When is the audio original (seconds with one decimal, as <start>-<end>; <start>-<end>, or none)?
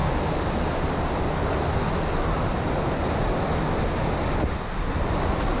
0.0-5.6